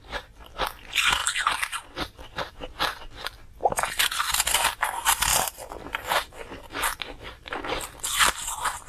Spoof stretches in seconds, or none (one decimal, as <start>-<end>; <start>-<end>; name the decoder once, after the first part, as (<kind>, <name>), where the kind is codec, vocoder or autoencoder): 1.2-4.3 (vocoder, BigVGAN v2); 5.3-8.9